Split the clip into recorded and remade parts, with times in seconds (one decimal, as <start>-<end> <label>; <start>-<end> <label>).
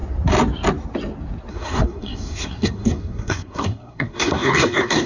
0.0-1.5 recorded; 1.5-5.1 remade